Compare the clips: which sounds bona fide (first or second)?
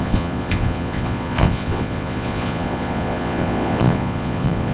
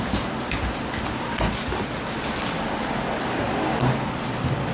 second